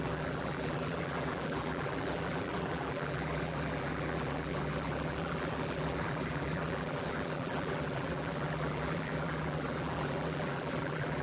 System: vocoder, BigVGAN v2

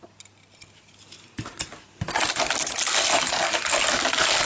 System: none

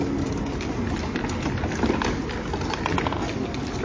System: none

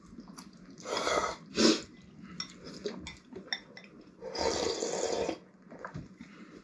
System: none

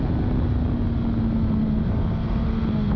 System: none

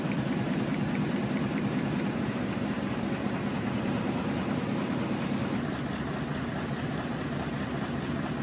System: vocoder, BigVGAN v2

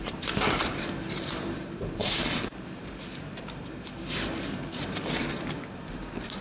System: vocoder, BigVGAN v2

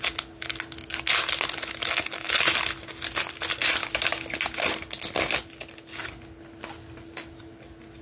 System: none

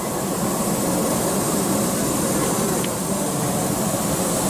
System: vocoder, BigVGAN v2